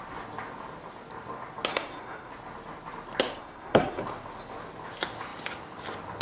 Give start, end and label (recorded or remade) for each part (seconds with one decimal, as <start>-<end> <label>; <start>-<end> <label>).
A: 0.0-1.7 recorded; 1.7-2.3 remade; 2.3-3.4 recorded; 3.4-4.0 remade; 4.0-6.2 recorded